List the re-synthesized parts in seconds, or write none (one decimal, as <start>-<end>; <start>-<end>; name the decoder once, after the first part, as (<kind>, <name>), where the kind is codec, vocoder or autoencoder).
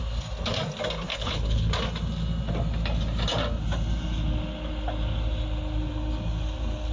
1.1-1.7 (codec, HILCodec)